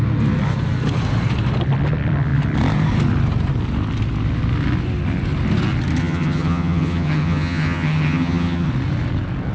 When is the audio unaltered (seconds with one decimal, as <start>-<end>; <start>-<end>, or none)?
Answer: 0.0-6.0; 8.7-9.5